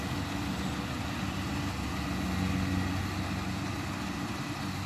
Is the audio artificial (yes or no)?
no